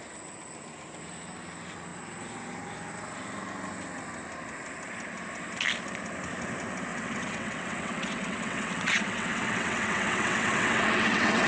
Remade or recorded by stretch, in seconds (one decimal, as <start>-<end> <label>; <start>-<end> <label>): 0.0-6.9 recorded; 6.9-11.5 remade

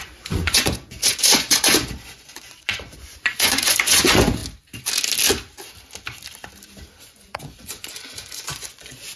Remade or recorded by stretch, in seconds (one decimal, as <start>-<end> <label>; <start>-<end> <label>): 0.0-4.4 remade; 4.4-7.0 recorded; 7.0-9.2 remade

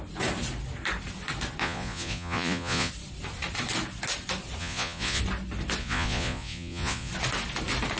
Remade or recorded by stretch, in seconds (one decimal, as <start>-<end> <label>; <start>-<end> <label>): 0.0-1.6 recorded; 1.6-2.9 remade; 2.9-4.6 recorded; 4.6-5.2 remade; 5.2-5.8 recorded; 5.8-7.1 remade; 7.1-8.0 recorded

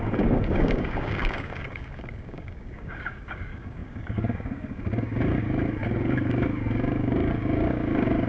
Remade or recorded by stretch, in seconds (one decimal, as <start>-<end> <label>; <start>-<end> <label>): 0.0-8.3 remade

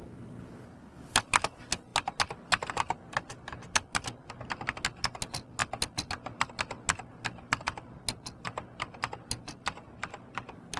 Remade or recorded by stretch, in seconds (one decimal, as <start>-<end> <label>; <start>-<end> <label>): 0.0-10.8 recorded

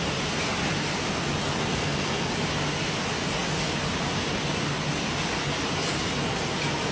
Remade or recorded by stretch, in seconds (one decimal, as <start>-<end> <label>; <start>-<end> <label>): 0.0-1.7 recorded; 1.7-2.3 remade; 2.3-6.9 recorded

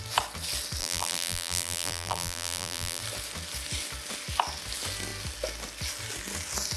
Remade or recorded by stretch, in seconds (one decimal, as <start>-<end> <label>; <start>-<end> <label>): 0.0-0.8 recorded; 0.8-3.0 remade; 3.0-6.8 recorded

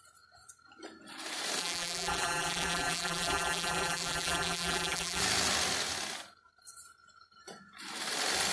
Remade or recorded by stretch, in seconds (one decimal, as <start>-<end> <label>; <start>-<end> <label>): 0.0-1.6 recorded; 1.6-5.2 remade; 5.2-8.5 recorded